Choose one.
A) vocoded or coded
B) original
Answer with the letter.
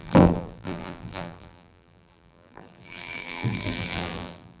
A